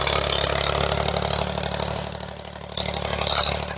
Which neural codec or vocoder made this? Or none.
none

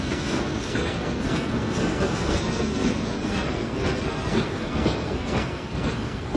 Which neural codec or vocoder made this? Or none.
codec, SNAC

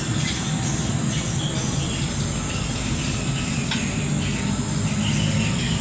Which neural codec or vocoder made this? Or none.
none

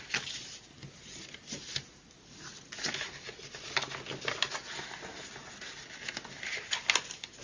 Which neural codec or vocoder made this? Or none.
none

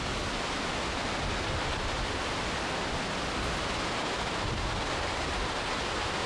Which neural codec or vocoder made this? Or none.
none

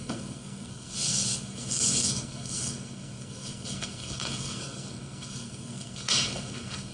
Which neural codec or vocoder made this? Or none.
codec, SNAC